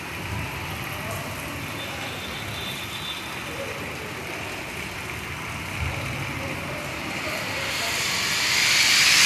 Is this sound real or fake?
real